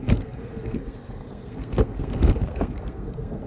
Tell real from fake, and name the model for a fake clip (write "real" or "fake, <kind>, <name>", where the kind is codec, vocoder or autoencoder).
fake, codec, SNAC